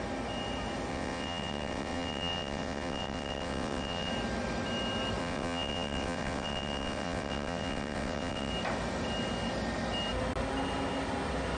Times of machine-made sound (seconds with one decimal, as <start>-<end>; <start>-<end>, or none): 0.9-4.1; 5.2-8.5